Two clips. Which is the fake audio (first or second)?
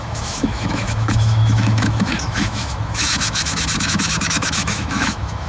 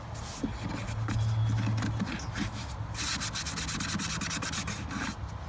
first